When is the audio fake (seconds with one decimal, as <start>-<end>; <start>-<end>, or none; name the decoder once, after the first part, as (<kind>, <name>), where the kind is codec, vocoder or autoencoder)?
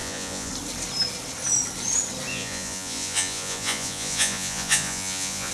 0.0-0.5 (vocoder, Vocos); 2.3-5.5